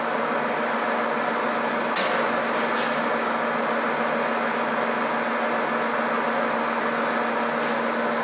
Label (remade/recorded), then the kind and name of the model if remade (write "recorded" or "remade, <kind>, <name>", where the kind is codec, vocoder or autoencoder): recorded